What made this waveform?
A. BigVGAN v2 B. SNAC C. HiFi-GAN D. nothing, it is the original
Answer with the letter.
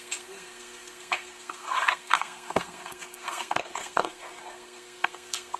B